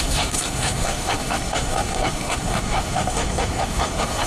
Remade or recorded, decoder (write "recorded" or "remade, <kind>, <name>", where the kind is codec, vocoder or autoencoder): remade, codec, SNAC